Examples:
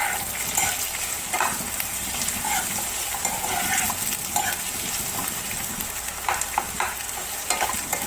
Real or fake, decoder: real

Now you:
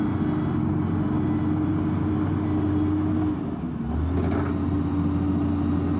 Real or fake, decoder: real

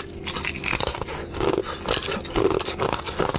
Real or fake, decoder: real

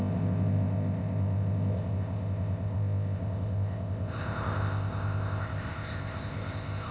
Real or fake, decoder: fake, codec, ZipCodec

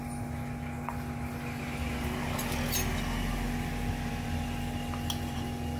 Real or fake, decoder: real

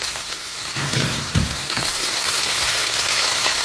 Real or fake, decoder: fake, codec, SNAC